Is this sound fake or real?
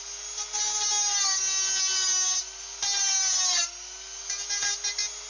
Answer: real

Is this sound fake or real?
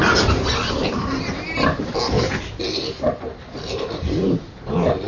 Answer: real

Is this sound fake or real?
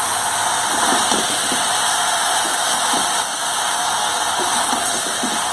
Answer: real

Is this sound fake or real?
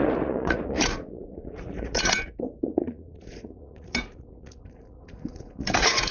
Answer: fake